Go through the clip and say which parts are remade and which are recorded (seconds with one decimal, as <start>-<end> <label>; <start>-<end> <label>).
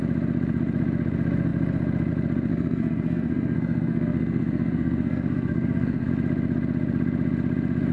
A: 0.0-2.5 recorded; 2.5-6.1 remade; 6.1-7.9 recorded